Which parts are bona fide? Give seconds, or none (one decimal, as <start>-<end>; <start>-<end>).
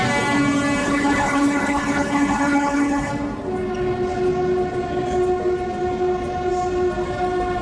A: 0.0-0.8; 3.1-7.6